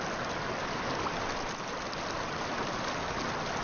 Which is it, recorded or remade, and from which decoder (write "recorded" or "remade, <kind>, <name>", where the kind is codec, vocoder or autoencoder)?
recorded